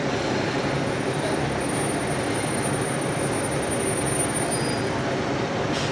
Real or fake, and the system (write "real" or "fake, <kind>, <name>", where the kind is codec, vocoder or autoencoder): fake, vocoder, BigVGAN v2